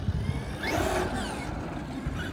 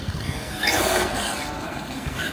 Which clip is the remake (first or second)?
second